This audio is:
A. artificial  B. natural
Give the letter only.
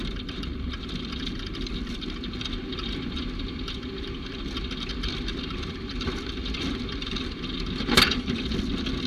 A